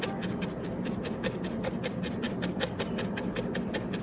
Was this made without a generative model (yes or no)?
yes